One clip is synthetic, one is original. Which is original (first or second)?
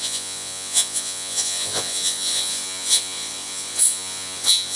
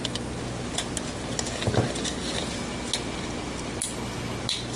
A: second